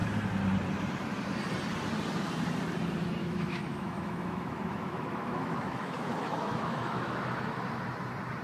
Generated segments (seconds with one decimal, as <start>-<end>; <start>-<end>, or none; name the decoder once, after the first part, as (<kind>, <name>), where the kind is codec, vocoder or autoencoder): 3.2-7.8 (autoencoder, DAC-VAE)